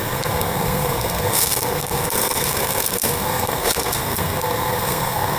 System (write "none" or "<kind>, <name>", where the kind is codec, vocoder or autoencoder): codec, SNAC